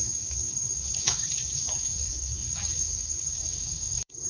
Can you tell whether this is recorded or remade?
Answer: remade